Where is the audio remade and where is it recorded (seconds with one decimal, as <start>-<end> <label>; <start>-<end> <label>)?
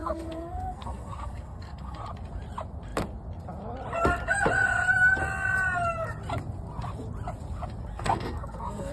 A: 0.0-2.0 remade; 2.0-7.9 recorded; 7.9-8.9 remade